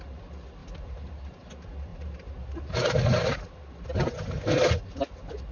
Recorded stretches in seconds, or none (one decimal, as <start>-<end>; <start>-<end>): 0.0-0.6; 1.1-1.9; 3.6-5.5